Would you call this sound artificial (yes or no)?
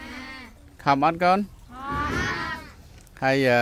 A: no